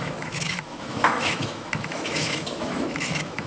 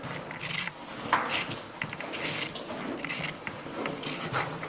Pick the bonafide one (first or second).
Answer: second